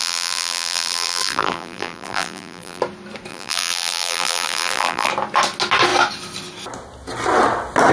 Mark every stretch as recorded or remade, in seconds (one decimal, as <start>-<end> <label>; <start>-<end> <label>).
0.0-2.8 remade; 2.8-3.3 recorded; 3.3-5.1 remade; 5.1-7.9 recorded